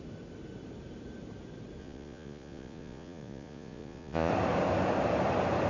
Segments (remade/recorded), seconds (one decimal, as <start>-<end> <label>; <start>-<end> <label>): 0.0-1.8 recorded; 1.8-4.3 remade; 4.3-5.7 recorded

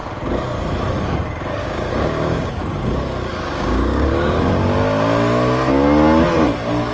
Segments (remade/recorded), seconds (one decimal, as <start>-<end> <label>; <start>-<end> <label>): 0.0-1.6 recorded; 1.6-2.5 remade; 2.5-3.3 recorded; 3.3-4.5 remade; 4.5-6.9 recorded

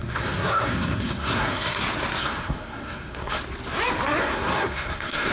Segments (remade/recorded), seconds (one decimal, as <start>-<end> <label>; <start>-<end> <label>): 0.0-1.8 remade; 1.8-2.2 recorded; 2.2-3.4 remade; 3.4-4.2 recorded; 4.2-5.3 remade

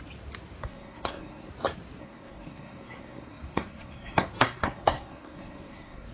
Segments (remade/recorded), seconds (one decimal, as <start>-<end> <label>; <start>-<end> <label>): 0.0-0.7 recorded; 0.7-1.5 remade; 1.5-2.0 recorded; 2.0-6.1 remade

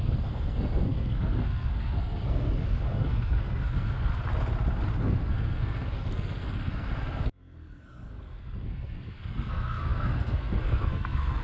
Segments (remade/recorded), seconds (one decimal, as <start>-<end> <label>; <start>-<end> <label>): 0.0-4.1 remade; 4.1-5.0 recorded; 5.0-11.4 remade

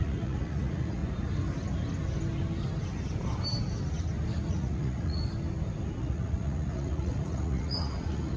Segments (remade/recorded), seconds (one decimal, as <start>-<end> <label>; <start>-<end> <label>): 0.0-1.0 remade; 1.0-4.5 recorded; 4.5-5.2 remade; 5.2-6.0 recorded; 6.0-8.4 remade

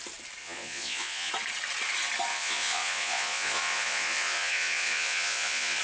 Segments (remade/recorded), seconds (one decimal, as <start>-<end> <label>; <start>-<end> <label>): 0.0-0.4 recorded; 0.4-1.3 remade; 1.3-2.3 recorded; 2.3-5.8 remade

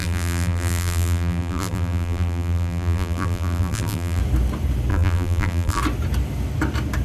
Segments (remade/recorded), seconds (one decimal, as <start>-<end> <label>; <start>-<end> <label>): 0.0-4.2 remade; 4.2-4.9 recorded; 4.9-5.8 remade; 5.8-7.0 recorded